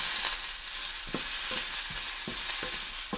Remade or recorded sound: recorded